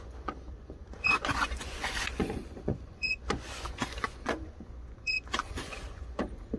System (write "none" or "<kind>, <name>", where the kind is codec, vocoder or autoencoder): vocoder, Vocos